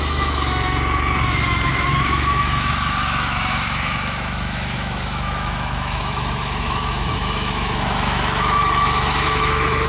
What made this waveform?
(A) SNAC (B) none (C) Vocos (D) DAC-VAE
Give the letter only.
D